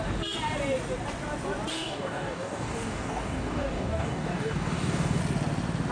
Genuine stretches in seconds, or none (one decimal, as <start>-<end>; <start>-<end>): 0.0-1.7; 5.2-5.9